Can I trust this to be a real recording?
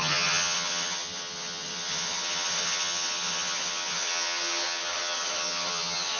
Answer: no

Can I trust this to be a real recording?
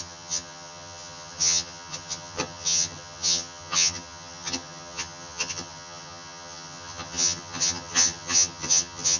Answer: no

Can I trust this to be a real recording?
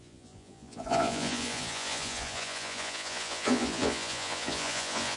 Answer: no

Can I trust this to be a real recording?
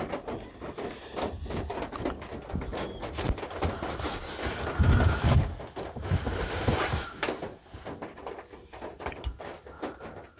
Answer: yes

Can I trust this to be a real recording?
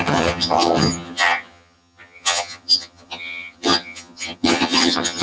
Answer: no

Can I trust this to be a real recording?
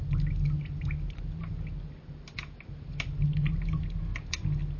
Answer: yes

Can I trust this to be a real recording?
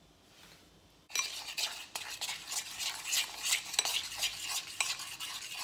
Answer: yes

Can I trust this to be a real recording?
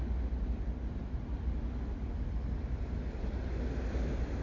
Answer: yes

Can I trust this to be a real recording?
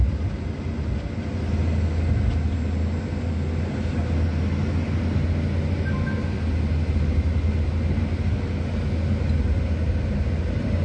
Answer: yes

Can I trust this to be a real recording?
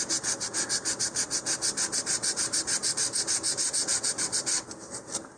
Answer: yes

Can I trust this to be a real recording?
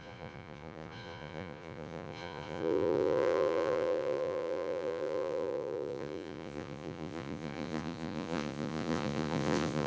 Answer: no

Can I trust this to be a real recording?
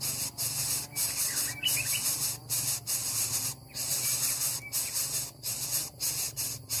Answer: yes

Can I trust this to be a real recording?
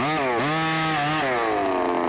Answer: yes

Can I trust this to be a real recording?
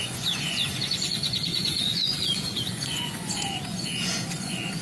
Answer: no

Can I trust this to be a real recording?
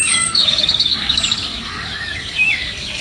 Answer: no